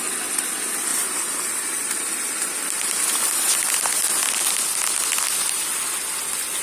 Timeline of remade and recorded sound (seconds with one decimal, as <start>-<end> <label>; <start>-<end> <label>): 0.0-0.9 recorded; 0.9-4.6 remade; 4.6-6.6 recorded